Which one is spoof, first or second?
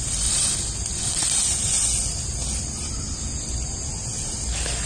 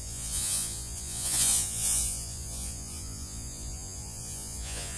second